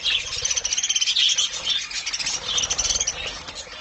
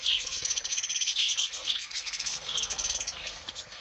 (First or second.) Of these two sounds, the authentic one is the first